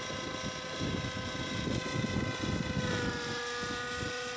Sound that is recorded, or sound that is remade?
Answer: recorded